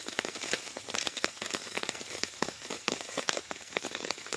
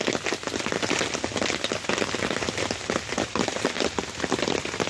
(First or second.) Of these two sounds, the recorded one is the second